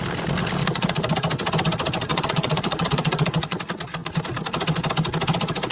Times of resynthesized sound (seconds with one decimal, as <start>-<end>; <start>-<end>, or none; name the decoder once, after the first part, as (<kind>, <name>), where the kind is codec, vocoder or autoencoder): 0.6-1.1 (vocoder, Vocos); 2.1-3.6